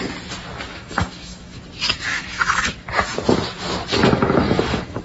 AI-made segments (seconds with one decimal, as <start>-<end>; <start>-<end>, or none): 0.7-1.6; 2.1-2.6; 4.0-5.0